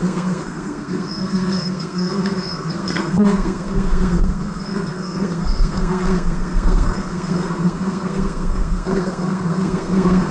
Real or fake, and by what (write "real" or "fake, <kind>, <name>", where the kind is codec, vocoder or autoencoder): fake, codec, SNAC